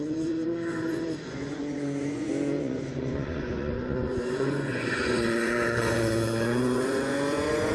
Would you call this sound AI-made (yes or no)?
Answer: yes